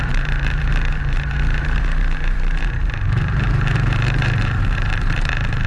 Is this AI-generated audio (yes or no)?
yes